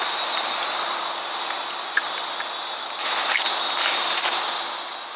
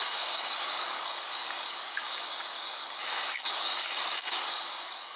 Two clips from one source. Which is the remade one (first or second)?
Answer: second